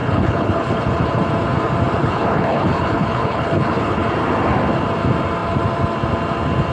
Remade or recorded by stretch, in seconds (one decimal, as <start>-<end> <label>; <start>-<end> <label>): 0.0-0.9 remade; 0.9-2.0 recorded; 2.0-4.0 remade; 4.0-6.7 recorded